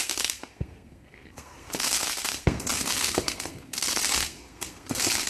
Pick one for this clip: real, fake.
fake